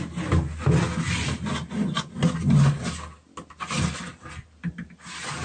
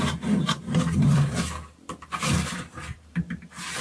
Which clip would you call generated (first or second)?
second